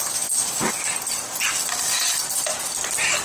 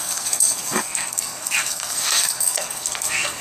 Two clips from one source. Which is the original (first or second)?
first